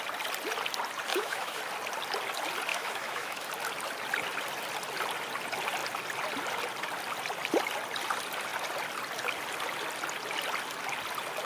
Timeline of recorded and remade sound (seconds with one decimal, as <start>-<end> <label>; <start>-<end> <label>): 0.0-1.1 recorded; 1.1-1.6 remade; 1.6-2.7 recorded; 2.7-3.5 remade; 3.5-11.4 recorded